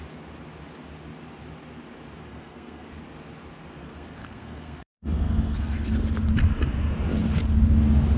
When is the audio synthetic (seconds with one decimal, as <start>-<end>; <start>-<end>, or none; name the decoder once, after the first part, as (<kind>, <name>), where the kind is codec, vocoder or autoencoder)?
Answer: 2.3-2.9 (codec, SNAC); 3.8-6.0